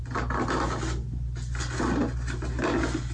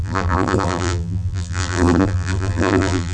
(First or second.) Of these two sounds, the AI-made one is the second